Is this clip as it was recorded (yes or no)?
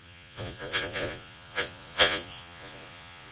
no